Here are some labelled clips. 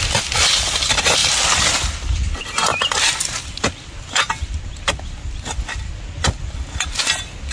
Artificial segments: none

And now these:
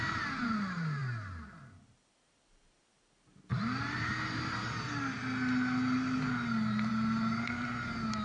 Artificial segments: none

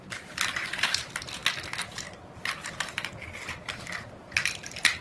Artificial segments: none

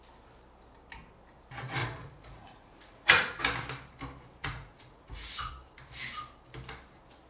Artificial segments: 1.8-3.4 (vocoder, Vocos); 4.4-5.5

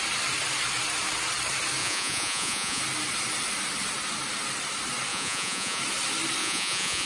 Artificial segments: 1.8-2.8 (vocoder, Vocos); 5.1-5.8; 6.4-7.1

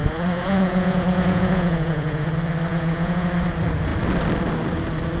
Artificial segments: 0.0-2.3 (vocoder, Vocos); 2.7-3.3

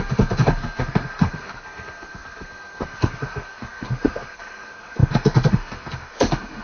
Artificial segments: 0.0-6.6 (codec, SNAC)